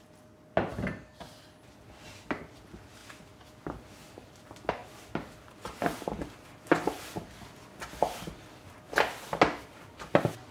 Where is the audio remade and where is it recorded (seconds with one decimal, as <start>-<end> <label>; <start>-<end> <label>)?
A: 0.0-10.5 recorded